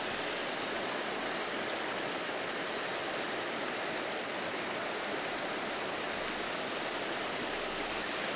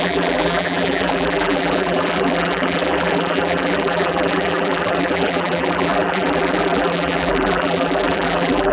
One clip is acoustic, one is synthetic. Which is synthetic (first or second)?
second